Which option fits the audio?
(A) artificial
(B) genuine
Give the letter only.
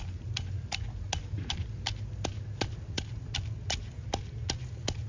B